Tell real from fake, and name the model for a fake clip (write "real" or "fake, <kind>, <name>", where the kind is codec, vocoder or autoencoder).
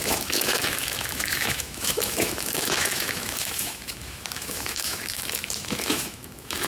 fake, autoencoder, DAC-VAE